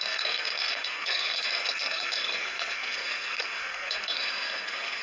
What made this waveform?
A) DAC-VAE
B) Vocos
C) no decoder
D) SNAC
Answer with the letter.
D